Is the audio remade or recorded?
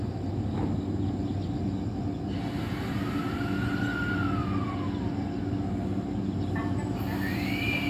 recorded